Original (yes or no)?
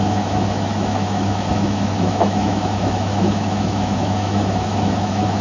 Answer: no